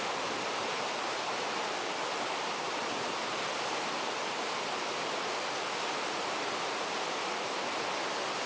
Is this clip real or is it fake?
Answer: real